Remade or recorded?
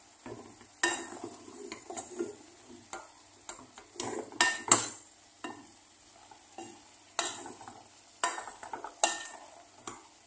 recorded